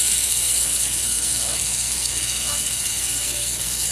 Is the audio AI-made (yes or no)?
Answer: yes